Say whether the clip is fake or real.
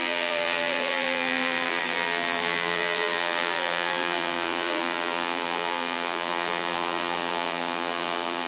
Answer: fake